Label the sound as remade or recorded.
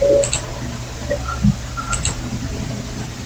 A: recorded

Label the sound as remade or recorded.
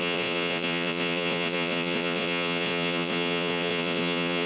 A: remade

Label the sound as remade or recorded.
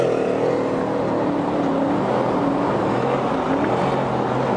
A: recorded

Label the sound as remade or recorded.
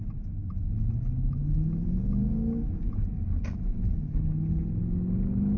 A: recorded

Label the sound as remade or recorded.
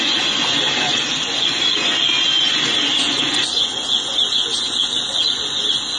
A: remade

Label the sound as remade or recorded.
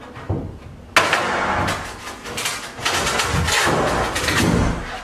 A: recorded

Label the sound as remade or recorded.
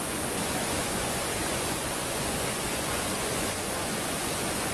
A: remade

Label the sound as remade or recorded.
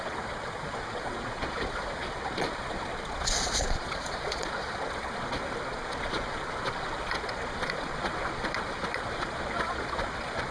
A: remade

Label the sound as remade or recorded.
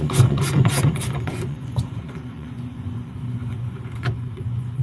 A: remade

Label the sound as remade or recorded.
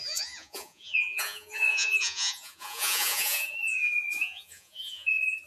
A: remade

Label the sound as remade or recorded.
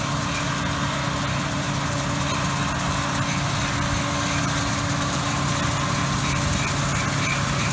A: recorded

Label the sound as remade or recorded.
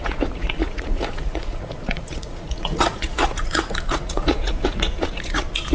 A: remade